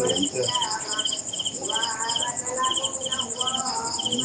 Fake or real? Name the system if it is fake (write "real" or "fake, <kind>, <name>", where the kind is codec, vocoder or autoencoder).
real